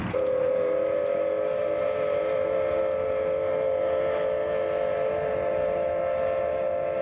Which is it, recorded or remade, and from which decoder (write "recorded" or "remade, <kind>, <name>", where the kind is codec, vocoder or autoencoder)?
recorded